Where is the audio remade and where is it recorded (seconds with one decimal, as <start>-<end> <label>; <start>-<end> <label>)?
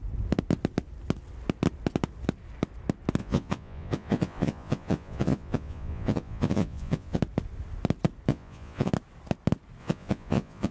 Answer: 0.0-3.2 recorded; 3.2-7.2 remade; 7.2-8.3 recorded; 8.3-8.9 remade; 8.9-9.8 recorded; 9.8-10.7 remade